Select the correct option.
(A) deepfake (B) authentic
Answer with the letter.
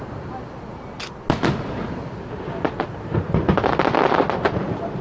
B